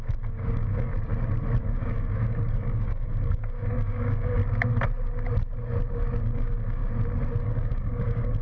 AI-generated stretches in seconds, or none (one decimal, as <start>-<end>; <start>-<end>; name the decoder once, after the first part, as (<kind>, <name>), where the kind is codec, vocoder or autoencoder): 0.0-0.9 (codec, DAC); 1.6-4.4; 6.2-6.8; 7.4-8.4